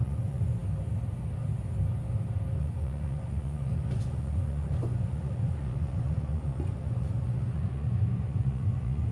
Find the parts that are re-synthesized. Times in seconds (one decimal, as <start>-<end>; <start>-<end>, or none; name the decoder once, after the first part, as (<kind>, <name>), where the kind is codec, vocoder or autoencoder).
0.0-0.6 (vocoder, Vocos); 2.6-9.1